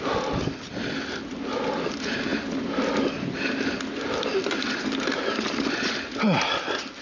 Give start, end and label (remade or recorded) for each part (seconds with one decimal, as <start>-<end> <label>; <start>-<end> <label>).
0.0-7.0 recorded